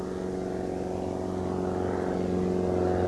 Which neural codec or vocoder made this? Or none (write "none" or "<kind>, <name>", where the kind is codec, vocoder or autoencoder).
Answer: none